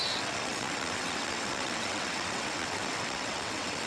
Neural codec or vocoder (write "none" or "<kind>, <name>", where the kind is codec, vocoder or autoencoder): vocoder, WaveNeXt